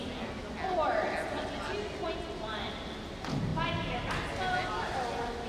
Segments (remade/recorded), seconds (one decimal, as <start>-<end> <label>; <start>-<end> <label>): 0.0-5.5 recorded